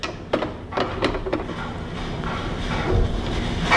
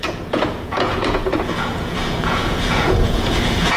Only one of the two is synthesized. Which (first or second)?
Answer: second